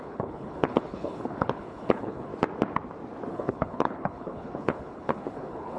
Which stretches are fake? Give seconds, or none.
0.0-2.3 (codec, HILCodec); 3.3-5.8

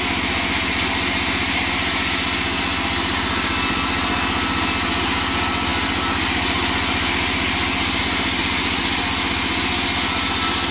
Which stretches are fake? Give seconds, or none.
none

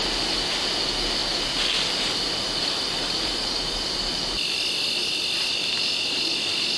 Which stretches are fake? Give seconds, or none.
none